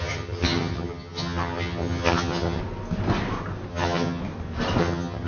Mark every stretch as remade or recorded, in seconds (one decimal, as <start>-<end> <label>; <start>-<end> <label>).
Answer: 0.0-2.6 remade; 2.6-3.7 recorded; 3.7-4.2 remade; 4.2-4.8 recorded; 4.8-5.3 remade